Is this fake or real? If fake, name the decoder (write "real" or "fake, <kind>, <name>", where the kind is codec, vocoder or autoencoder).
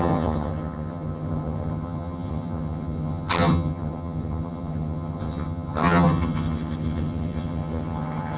fake, vocoder, HiFi-GAN